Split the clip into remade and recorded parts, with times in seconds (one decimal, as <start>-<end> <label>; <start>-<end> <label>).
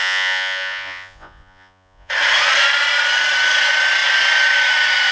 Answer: 0.0-2.1 remade; 2.1-5.1 recorded